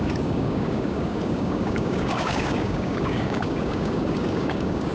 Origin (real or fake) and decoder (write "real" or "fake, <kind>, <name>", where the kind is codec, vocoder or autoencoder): fake, codec, DAC